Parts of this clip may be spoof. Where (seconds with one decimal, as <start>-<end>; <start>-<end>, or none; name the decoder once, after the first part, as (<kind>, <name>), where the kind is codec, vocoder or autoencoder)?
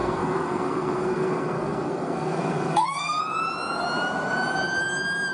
0.0-3.2 (codec, SNAC)